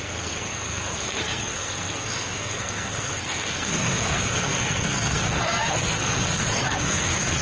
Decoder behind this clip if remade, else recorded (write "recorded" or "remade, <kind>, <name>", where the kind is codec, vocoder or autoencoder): remade, codec, SNAC